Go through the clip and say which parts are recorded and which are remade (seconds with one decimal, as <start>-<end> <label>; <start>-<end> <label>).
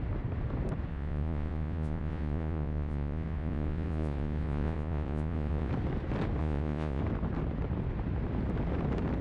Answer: 0.0-0.9 recorded; 0.9-5.7 remade; 5.7-6.4 recorded; 6.4-7.0 remade; 7.0-9.2 recorded